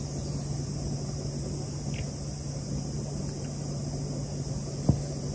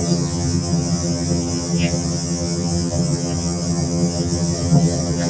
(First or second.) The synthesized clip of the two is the second